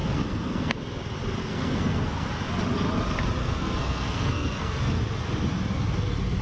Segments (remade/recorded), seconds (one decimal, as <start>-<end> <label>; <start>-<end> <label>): 0.0-0.8 remade; 0.8-1.4 recorded; 1.4-2.3 remade; 2.3-3.4 recorded; 3.4-4.8 remade; 4.8-6.4 recorded